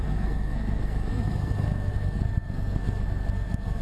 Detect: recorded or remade remade